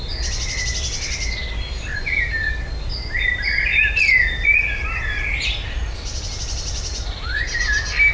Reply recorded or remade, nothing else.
recorded